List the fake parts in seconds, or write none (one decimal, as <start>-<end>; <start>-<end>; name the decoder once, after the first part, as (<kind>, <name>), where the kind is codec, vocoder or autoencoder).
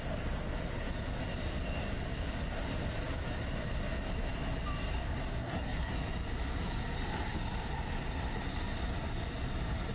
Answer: 5.4-5.9 (codec, SNAC)